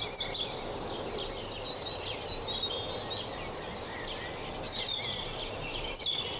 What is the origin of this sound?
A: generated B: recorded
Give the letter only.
B